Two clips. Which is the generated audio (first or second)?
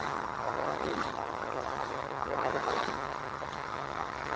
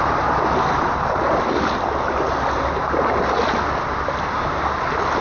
first